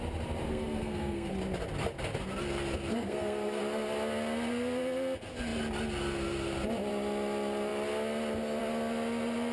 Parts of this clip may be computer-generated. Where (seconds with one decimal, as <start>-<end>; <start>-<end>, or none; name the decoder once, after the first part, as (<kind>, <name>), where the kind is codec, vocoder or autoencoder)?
0.5-1.3 (codec, SNAC); 2.9-3.6